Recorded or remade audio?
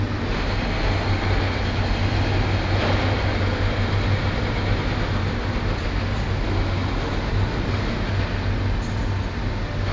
recorded